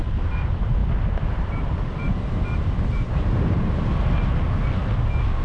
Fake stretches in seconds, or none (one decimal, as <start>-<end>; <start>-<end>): 0.8-3.2